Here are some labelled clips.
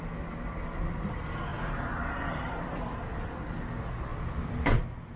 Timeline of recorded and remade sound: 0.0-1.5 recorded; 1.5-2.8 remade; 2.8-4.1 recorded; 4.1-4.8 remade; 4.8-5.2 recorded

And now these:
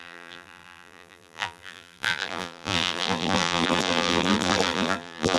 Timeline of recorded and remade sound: 0.0-5.4 remade